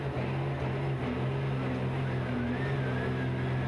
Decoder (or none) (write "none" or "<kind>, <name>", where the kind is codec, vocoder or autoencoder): none